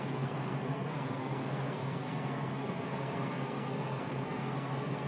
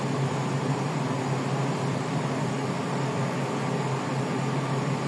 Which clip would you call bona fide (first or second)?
second